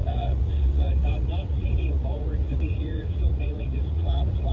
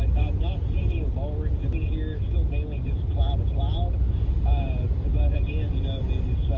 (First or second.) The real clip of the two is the second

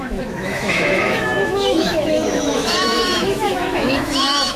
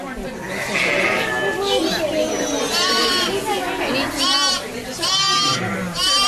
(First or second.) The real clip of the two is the second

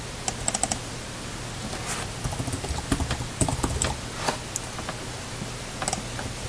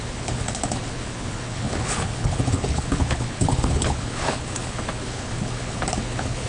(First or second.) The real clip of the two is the first